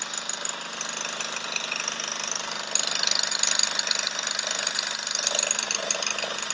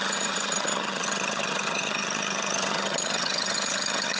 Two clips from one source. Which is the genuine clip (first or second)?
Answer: first